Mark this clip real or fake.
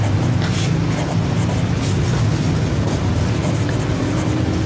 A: real